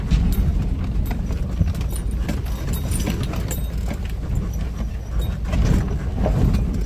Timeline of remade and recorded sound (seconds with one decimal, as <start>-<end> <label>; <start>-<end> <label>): 0.0-6.9 recorded